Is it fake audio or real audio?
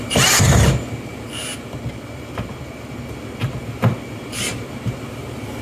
real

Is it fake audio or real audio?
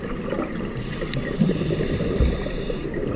real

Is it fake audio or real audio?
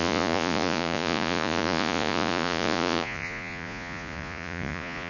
fake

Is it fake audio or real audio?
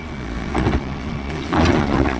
fake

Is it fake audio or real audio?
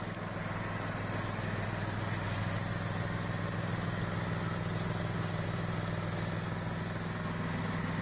real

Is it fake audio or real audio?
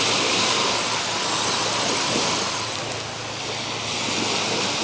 real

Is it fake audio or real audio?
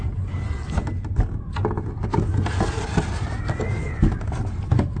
real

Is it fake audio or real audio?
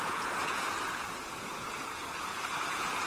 fake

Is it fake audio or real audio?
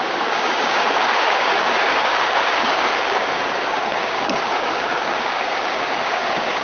fake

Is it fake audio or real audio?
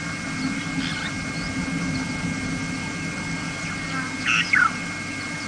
real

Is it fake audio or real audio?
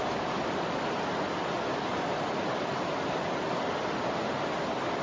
real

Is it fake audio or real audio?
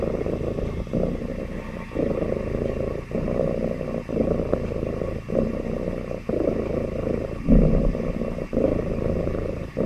real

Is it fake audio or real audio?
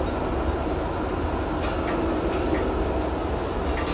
real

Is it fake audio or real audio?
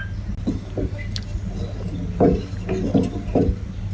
real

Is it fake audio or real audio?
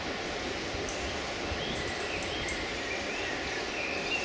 real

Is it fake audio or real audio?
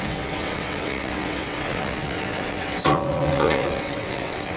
fake